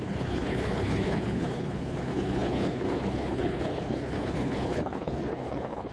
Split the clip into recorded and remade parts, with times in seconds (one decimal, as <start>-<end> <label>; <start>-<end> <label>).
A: 0.0-5.9 remade